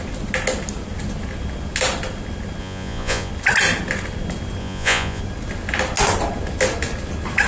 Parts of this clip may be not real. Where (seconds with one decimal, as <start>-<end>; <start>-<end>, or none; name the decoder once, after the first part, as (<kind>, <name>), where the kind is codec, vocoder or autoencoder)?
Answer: 2.6-3.3 (vocoder, Vocos); 4.6-5.2